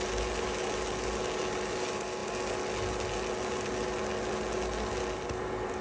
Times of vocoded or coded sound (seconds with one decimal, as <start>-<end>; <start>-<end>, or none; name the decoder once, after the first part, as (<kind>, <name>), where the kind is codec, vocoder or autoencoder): none